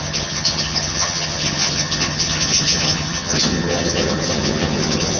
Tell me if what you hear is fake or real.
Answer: fake